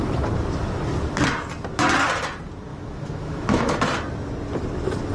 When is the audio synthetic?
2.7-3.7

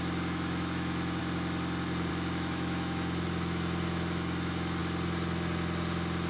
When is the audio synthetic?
0.0-1.2; 2.1-4.8